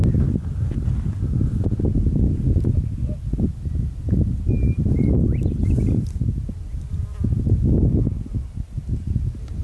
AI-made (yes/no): no